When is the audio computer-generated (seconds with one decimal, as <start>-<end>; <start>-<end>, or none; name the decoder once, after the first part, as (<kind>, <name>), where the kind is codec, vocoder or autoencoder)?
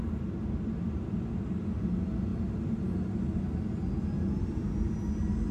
none